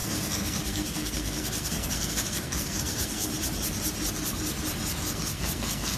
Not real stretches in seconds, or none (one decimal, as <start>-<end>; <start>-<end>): 0.0-3.3; 5.0-6.0